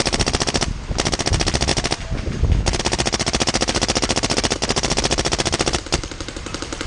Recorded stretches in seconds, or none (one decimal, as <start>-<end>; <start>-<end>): 0.0-6.9